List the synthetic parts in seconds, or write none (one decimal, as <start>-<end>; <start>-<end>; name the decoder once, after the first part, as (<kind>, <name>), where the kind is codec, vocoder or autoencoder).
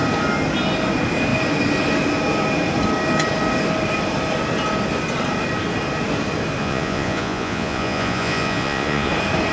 6.6-9.1 (vocoder, Vocos)